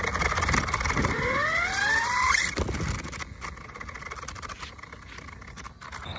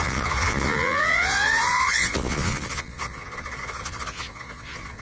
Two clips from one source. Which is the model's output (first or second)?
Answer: second